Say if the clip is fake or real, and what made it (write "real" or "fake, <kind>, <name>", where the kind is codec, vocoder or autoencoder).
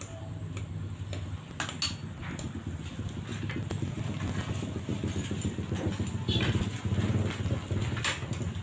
real